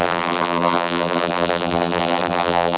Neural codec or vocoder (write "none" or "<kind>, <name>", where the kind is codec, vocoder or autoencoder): vocoder, BigVGAN v2